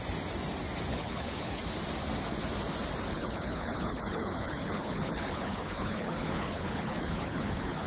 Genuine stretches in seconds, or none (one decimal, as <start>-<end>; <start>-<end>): 0.0-0.9; 1.6-3.1

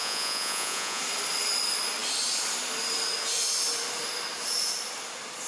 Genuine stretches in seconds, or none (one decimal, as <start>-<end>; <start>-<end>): 1.0-5.5

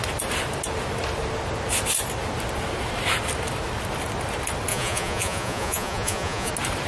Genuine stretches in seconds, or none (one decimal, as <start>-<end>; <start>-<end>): 0.0-4.7; 6.5-6.9

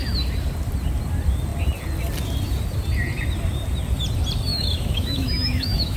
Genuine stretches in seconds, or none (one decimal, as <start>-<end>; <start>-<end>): 0.0-4.5

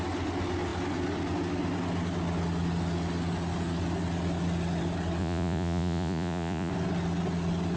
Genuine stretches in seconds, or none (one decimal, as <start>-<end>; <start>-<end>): 0.0-5.2; 6.7-7.8

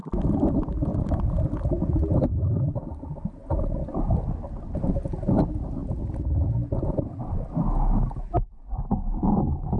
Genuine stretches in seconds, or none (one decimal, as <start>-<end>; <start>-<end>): 0.0-0.9; 2.0-3.4; 4.9-9.8

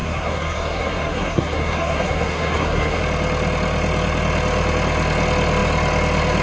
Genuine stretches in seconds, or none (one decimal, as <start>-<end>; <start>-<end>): 3.0-6.4